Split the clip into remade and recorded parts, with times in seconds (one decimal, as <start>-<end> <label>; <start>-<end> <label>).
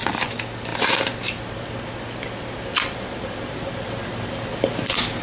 0.0-5.2 recorded